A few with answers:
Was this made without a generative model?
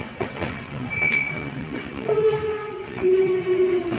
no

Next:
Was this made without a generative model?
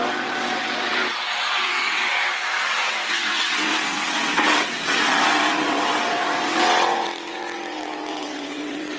no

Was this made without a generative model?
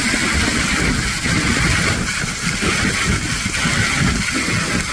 yes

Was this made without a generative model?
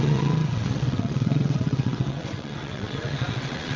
no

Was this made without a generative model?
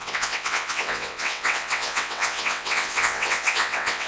no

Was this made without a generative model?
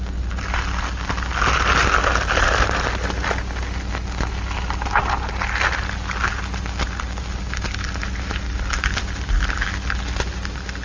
yes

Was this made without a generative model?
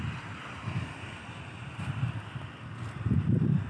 yes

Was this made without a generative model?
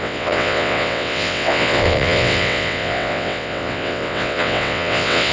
no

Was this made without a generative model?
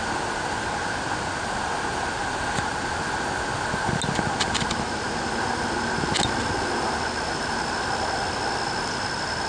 yes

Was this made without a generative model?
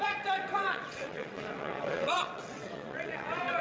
no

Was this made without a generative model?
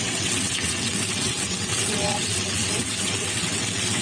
no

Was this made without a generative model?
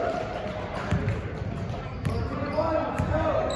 yes